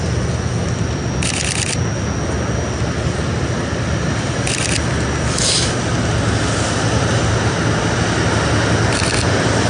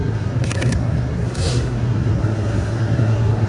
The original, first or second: first